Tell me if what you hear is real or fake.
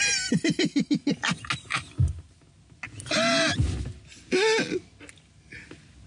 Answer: real